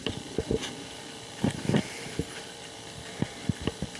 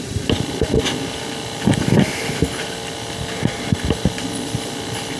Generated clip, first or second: first